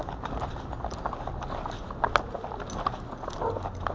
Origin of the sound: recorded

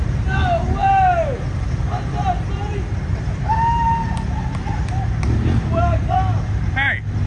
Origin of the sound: recorded